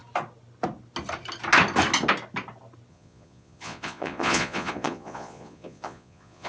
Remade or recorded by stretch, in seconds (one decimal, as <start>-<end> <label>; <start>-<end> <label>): 0.0-2.9 recorded; 2.9-6.5 remade